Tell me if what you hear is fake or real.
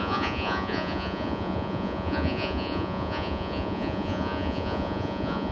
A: fake